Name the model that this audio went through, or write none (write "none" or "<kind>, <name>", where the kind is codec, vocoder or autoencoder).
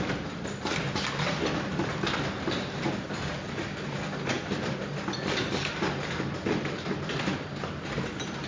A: none